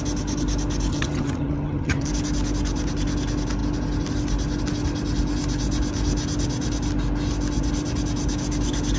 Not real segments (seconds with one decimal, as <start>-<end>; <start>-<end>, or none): 0.9-2.1